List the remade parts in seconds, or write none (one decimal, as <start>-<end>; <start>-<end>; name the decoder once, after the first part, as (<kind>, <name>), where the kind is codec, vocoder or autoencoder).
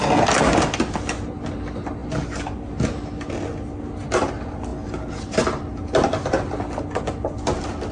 none